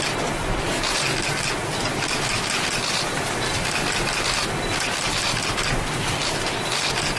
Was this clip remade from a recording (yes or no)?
no